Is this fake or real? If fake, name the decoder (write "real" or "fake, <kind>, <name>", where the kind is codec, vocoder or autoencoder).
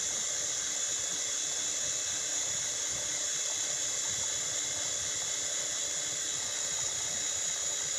real